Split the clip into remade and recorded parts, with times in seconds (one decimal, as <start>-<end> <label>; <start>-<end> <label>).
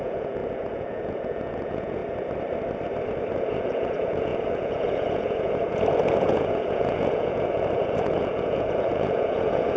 0.0-2.0 remade; 2.0-3.3 recorded; 3.3-9.8 remade